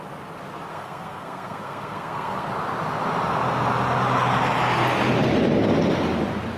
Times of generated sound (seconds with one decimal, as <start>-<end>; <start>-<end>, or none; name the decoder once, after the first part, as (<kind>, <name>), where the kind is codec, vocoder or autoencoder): 0.7-2.5 (codec, SNAC)